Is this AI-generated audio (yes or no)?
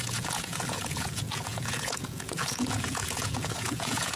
yes